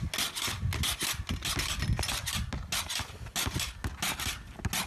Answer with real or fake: real